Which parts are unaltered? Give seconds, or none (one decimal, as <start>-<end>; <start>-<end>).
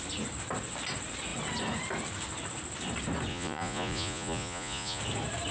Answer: 0.0-3.3; 5.0-5.5